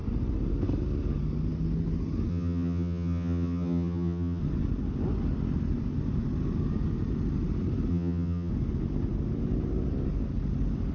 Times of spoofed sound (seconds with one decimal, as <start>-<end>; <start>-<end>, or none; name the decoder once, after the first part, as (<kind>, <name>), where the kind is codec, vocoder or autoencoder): 2.3-4.4 (vocoder, HiFi-GAN); 7.9-8.5